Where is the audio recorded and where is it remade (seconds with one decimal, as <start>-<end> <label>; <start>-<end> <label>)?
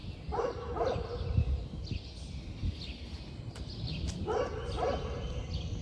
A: 0.0-5.8 recorded